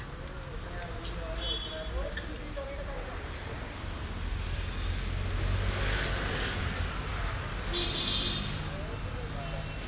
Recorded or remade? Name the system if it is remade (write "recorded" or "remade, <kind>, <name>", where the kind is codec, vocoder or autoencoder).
recorded